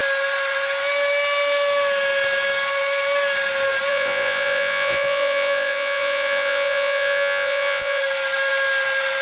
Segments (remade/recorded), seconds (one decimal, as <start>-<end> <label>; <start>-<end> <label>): 0.0-3.9 recorded; 3.9-8.0 remade; 8.0-9.2 recorded

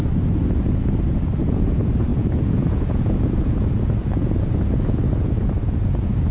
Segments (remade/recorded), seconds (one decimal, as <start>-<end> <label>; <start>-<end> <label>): 0.0-1.4 recorded; 1.4-6.3 remade

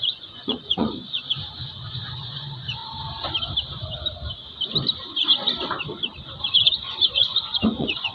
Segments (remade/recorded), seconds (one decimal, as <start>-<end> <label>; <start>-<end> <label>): 0.0-2.8 remade; 2.8-6.4 recorded; 6.4-8.1 remade

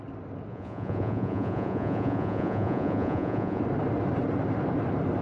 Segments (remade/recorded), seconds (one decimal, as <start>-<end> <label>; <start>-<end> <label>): 0.0-0.5 recorded; 0.5-3.6 remade; 3.6-5.2 recorded